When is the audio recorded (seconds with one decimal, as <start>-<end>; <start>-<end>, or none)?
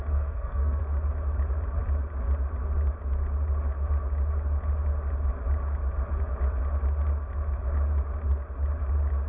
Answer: 0.8-9.3